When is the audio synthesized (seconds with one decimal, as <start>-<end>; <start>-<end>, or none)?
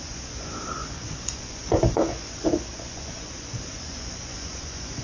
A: 0.0-5.0